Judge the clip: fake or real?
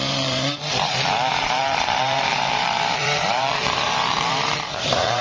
fake